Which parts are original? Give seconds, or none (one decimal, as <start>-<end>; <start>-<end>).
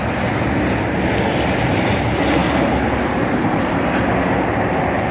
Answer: 0.0-2.4; 3.7-5.1